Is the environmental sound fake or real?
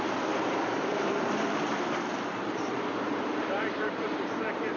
fake